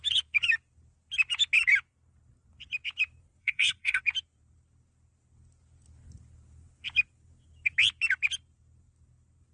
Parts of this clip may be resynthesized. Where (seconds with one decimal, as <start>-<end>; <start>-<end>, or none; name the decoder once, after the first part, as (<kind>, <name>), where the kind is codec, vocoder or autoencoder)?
3.4-4.0 (codec, SNAC)